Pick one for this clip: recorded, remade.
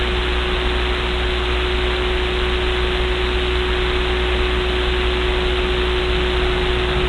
recorded